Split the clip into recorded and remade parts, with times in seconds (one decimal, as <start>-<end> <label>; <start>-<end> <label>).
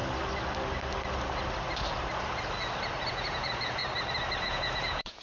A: 0.0-3.1 recorded; 3.1-3.8 remade; 3.8-4.4 recorded; 4.4-5.2 remade